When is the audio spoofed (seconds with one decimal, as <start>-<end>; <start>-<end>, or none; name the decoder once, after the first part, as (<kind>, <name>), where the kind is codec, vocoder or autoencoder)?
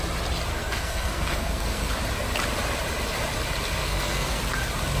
0.5-1.9 (codec, SNAC); 3.8-4.4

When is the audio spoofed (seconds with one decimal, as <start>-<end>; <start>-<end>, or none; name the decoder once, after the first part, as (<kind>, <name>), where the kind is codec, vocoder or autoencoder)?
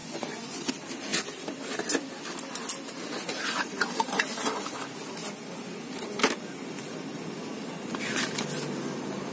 0.0-0.7 (vocoder, Vocos)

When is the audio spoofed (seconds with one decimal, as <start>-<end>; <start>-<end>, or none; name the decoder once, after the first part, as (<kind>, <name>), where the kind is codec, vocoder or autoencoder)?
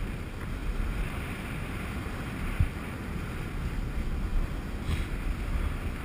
0.6-3.5 (vocoder, BigVGAN v2)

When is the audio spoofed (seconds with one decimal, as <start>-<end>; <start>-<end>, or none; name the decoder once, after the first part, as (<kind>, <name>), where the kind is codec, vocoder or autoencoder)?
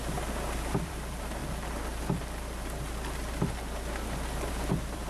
0.0-1.4 (vocoder, BigVGAN v2); 4.5-5.1